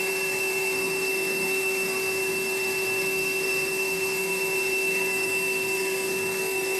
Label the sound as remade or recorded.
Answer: remade